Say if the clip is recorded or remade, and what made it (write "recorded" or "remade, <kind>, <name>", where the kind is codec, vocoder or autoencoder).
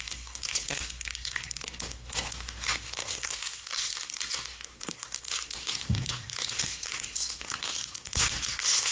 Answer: remade, codec, SNAC